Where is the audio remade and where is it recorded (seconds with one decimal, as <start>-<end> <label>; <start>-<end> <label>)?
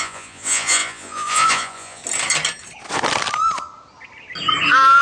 0.0-2.0 remade; 2.0-5.0 recorded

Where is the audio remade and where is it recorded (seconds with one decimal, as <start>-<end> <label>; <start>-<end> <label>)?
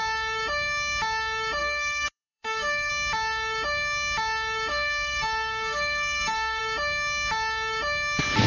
0.0-1.6 recorded; 1.6-2.9 remade; 2.9-4.7 recorded; 4.7-6.6 remade; 6.6-8.5 recorded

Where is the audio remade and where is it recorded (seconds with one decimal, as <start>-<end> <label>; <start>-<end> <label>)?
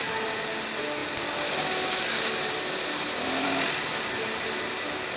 0.0-5.2 recorded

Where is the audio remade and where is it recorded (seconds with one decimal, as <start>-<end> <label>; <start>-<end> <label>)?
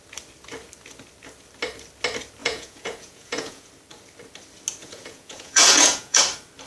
0.0-2.4 recorded; 2.4-3.7 remade; 3.7-4.8 recorded; 4.8-6.2 remade; 6.2-6.7 recorded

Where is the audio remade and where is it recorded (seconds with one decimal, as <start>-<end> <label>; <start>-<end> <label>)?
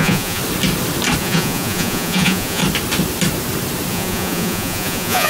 0.0-0.4 remade; 0.4-1.2 recorded; 1.2-2.6 remade; 2.6-3.9 recorded; 3.9-5.3 remade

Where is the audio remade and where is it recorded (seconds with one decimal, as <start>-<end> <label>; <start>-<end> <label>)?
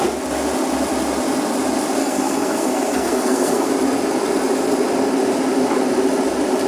0.0-2.0 recorded; 2.0-3.7 remade; 3.7-6.7 recorded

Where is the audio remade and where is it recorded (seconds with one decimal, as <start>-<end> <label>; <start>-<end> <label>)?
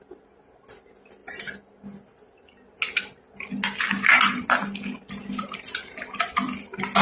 0.0-7.0 recorded